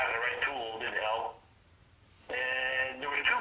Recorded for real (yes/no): yes